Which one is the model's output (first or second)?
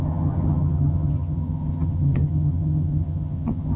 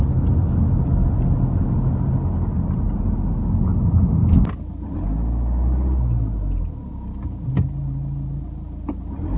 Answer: first